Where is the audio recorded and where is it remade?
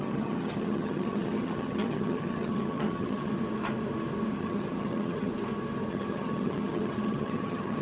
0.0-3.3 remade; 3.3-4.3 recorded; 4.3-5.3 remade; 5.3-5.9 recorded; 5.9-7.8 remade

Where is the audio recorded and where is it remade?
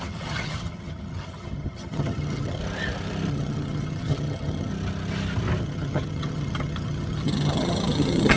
0.0-2.6 remade; 2.6-3.3 recorded; 3.3-4.7 remade; 4.7-5.6 recorded; 5.6-8.4 remade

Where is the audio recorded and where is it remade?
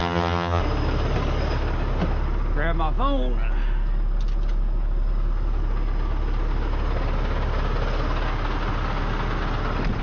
0.0-0.6 remade; 0.6-10.0 recorded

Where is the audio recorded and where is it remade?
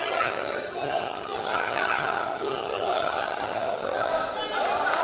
0.0-4.1 remade; 4.1-5.0 recorded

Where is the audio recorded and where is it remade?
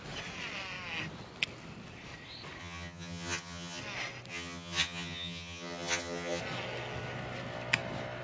0.0-2.6 recorded; 2.6-3.8 remade; 3.8-4.3 recorded; 4.3-6.4 remade; 6.4-8.2 recorded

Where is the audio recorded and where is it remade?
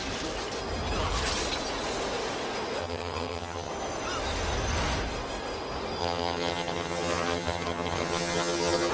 0.0-2.8 recorded; 2.8-3.7 remade; 3.7-6.0 recorded; 6.0-8.9 remade